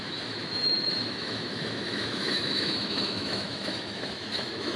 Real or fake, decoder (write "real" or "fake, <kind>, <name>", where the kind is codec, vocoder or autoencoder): fake, autoencoder, DAC-VAE